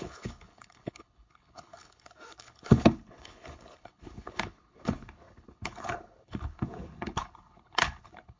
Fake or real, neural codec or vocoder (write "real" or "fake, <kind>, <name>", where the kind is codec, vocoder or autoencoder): fake, codec, HILCodec